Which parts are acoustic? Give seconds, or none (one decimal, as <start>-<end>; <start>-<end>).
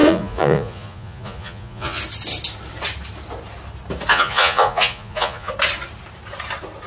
2.0-4.1; 5.5-6.9